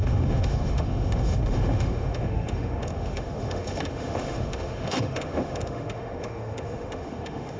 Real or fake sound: fake